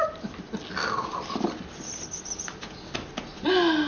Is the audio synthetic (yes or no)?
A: no